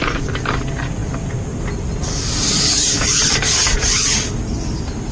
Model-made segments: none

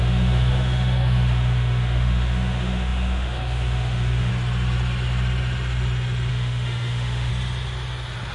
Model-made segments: 0.0-4.3 (autoencoder, DAC-VAE); 6.3-7.3

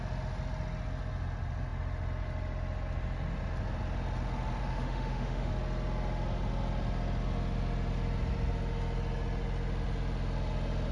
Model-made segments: 4.6-5.5 (autoencoder, DAC-VAE)